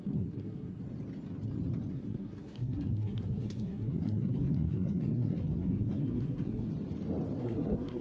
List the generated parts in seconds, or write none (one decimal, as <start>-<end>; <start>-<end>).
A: 0.0-0.8; 1.9-6.7; 7.4-8.0